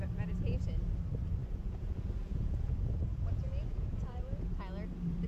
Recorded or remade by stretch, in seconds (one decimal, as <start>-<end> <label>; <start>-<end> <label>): 0.0-1.4 recorded; 1.4-4.6 remade; 4.6-5.3 recorded